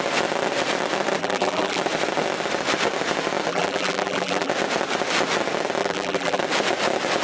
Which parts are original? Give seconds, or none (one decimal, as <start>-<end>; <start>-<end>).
0.0-1.2; 1.8-3.5; 4.5-5.8; 6.4-7.2